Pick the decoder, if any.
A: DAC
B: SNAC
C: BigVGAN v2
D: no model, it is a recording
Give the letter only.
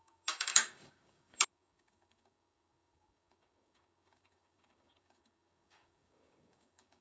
A